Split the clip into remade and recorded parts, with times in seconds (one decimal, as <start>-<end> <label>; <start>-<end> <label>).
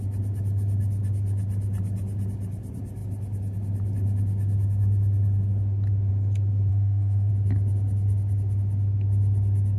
0.0-6.7 recorded; 6.7-7.3 remade; 7.3-9.8 recorded